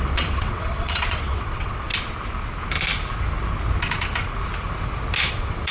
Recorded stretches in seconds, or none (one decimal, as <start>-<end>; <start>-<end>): 1.9-5.3